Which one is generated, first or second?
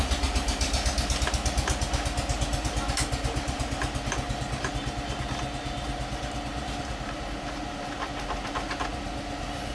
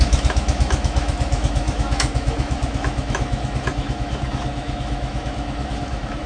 second